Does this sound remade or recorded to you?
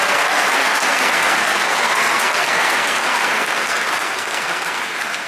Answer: remade